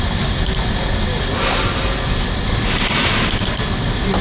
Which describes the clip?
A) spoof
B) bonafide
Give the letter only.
B